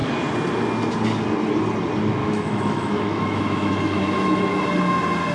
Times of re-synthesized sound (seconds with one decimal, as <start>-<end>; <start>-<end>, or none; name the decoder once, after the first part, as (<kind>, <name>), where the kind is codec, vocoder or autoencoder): 2.2-4.6 (autoencoder, DAC-VAE)

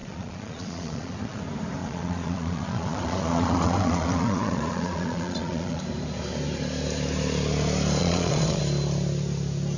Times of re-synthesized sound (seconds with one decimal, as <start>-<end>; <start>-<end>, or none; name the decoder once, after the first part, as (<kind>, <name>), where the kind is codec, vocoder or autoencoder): 0.0-1.4 (vocoder, Vocos); 1.8-5.8; 8.0-8.6

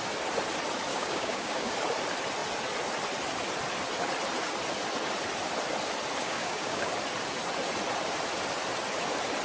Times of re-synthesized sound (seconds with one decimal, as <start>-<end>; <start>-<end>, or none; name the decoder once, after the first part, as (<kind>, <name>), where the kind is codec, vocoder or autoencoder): 0.9-1.7 (codec, DAC); 6.2-6.9